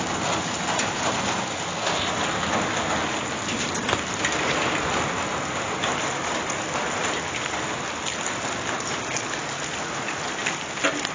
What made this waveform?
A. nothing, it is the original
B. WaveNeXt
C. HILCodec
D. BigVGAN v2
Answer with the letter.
A